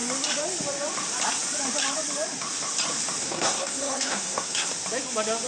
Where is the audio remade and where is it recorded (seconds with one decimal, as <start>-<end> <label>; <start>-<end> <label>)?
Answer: 0.0-3.2 recorded; 3.2-4.7 remade; 4.7-5.5 recorded